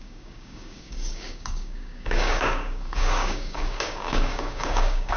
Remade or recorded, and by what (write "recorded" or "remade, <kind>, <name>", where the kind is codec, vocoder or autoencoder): remade, codec, DAC